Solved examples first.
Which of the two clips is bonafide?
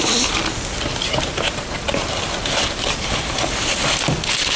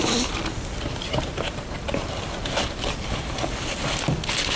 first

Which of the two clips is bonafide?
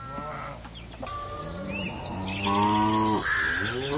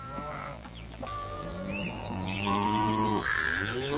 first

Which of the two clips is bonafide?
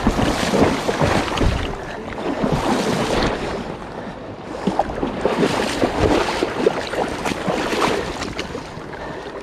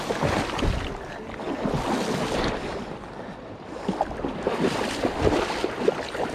second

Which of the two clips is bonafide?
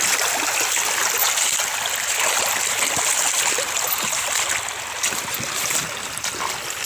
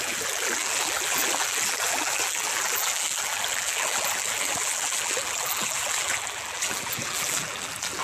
first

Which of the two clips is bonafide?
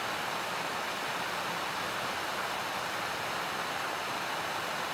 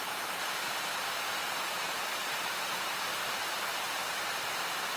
first